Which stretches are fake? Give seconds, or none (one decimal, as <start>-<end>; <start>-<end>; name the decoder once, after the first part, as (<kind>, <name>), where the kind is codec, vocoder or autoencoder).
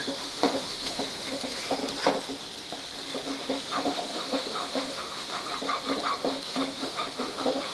0.0-1.8 (autoencoder, DAC-VAE); 3.5-5.5; 6.3-7.7